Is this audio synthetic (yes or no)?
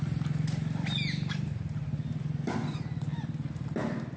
no